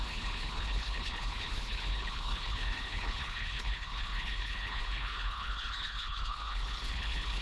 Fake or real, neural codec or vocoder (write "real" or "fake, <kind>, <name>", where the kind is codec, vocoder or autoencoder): fake, codec, HILCodec